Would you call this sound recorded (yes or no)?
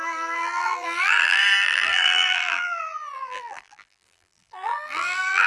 no